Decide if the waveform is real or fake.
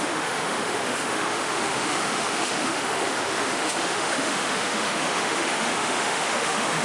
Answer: fake